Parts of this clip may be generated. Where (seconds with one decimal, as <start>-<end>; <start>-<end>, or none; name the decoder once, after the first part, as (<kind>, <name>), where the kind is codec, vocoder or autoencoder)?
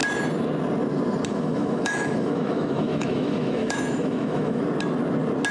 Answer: 1.3-4.6 (autoencoder, DAC-VAE)